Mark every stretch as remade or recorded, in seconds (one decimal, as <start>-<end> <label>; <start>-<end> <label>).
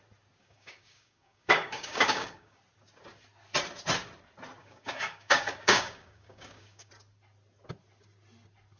0.0-0.4 recorded; 0.4-2.6 remade; 2.6-4.6 recorded; 4.6-6.9 remade; 6.9-8.8 recorded